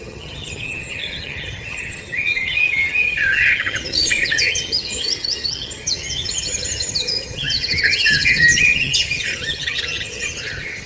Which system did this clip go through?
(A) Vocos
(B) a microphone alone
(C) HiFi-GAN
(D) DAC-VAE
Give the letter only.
C